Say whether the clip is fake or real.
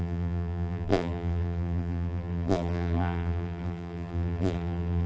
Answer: fake